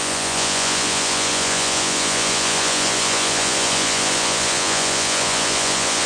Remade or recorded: remade